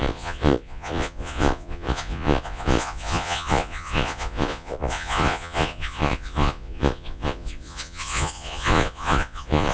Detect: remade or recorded remade